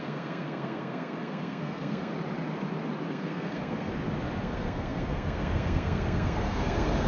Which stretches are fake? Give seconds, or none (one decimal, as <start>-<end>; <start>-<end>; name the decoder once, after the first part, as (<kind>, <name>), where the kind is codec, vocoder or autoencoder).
0.0-2.1 (codec, SNAC); 3.1-3.9; 4.4-7.1